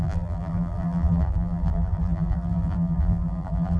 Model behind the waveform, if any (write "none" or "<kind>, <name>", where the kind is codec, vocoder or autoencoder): vocoder, BigVGAN v2